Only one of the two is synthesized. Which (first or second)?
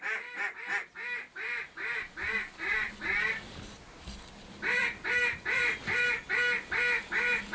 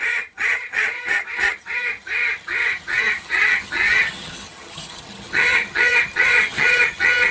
second